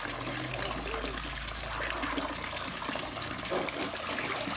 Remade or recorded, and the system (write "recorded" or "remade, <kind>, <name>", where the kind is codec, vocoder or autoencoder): recorded